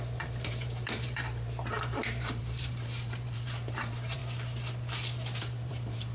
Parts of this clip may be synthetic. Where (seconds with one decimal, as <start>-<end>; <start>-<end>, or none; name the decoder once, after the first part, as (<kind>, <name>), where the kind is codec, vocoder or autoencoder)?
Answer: 0.0-4.2 (vocoder, BigVGAN v2); 5.4-6.1